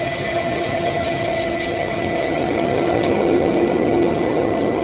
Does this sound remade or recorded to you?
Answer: remade